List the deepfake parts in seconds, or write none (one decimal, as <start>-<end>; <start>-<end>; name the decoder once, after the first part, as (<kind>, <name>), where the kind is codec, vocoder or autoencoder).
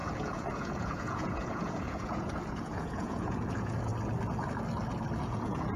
0.0-3.9 (vocoder, Vocos); 5.2-5.8